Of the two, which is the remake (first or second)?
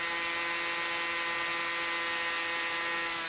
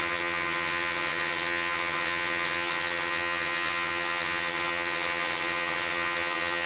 second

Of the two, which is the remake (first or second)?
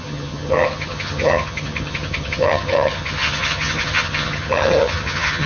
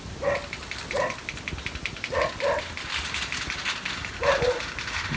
first